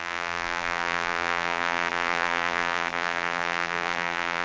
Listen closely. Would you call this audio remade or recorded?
remade